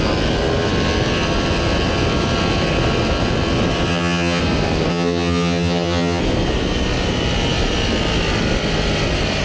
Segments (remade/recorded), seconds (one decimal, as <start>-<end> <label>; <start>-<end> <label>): 0.0-3.9 recorded; 3.9-4.4 remade; 4.4-4.9 recorded; 4.9-6.2 remade; 6.2-9.4 recorded